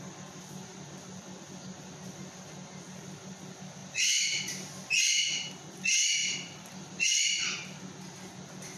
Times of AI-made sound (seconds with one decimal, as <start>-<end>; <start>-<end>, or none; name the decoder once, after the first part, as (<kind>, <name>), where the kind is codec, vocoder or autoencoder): 3.8-5.5 (vocoder, BigVGAN v2); 6.2-7.8